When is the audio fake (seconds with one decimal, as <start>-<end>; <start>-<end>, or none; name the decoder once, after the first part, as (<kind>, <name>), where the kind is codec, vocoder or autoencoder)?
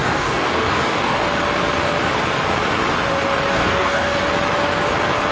0.0-1.2 (codec, DAC); 3.5-4.2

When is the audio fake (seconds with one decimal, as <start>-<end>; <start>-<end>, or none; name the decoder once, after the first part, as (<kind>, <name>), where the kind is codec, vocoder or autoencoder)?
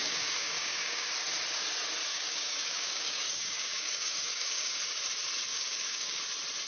0.0-1.1 (codec, DAC); 2.1-4.8; 5.5-6.2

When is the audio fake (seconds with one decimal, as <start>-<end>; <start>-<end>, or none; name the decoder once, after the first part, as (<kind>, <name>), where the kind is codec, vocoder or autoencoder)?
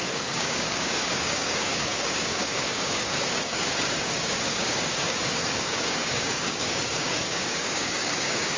0.0-8.6 (codec, DAC)